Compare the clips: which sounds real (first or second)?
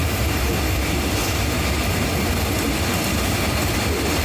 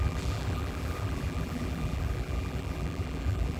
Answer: first